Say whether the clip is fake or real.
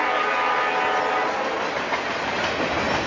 real